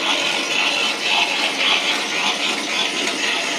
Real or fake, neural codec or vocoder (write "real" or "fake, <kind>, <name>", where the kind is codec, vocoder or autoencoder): real